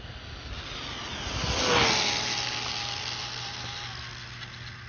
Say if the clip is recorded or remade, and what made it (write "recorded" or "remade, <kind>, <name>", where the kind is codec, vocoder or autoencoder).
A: recorded